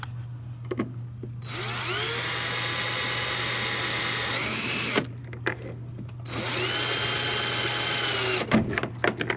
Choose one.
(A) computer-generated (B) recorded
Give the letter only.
B